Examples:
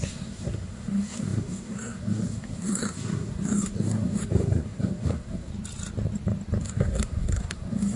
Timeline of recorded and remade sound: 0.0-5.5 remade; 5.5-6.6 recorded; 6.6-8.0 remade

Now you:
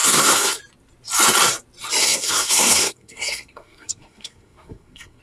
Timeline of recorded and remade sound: 0.0-0.6 remade; 0.6-2.0 recorded; 2.0-5.2 remade

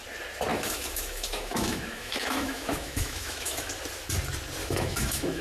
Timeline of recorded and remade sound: 0.0-0.5 recorded; 0.5-3.7 remade; 3.7-4.6 recorded; 4.6-5.4 remade

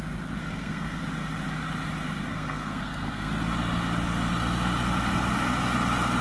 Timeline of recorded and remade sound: 0.0-0.4 recorded; 0.4-1.0 remade; 1.0-2.3 recorded; 2.3-3.3 remade; 3.3-6.2 recorded

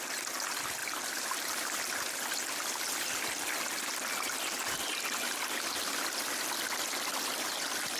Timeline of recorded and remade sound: 0.0-0.8 recorded; 0.8-1.8 remade; 1.8-8.0 recorded

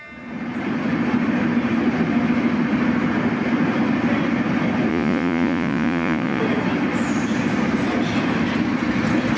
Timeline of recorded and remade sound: 0.0-4.9 recorded; 4.9-6.4 remade; 6.4-9.4 recorded

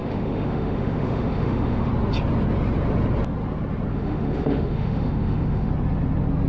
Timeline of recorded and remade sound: 0.0-1.9 remade; 1.9-3.9 recorded; 3.9-5.7 remade; 5.7-6.5 recorded

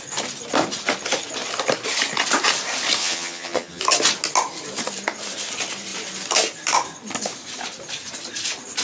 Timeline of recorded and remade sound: 0.0-3.0 recorded; 3.0-3.8 remade; 3.8-8.8 recorded